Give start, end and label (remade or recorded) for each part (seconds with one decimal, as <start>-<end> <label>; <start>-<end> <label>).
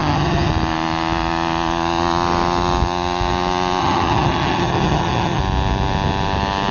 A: 0.0-0.5 remade; 0.5-3.8 recorded; 3.8-5.4 remade; 5.4-6.7 recorded